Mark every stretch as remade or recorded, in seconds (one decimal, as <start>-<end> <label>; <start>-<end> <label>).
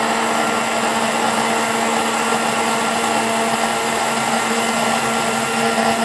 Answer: 0.0-6.0 recorded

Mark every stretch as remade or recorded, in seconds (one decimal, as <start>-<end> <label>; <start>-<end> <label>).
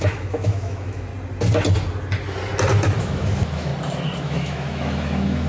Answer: 0.0-1.1 remade; 1.1-3.0 recorded; 3.0-3.7 remade; 3.7-4.2 recorded; 4.2-5.5 remade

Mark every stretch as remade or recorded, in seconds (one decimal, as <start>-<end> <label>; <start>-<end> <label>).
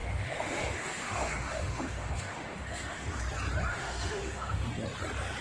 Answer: 0.0-3.2 remade; 3.2-3.7 recorded; 3.7-4.7 remade; 4.7-5.4 recorded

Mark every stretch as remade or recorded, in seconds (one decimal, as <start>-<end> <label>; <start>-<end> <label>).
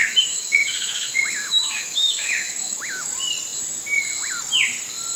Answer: 0.0-3.1 remade; 3.1-5.2 recorded